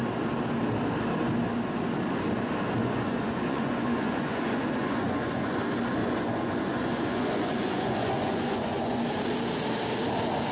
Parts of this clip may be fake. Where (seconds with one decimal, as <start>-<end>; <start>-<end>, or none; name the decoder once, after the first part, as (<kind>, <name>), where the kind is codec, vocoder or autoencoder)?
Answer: 2.8-5.6 (vocoder, Vocos); 6.0-9.0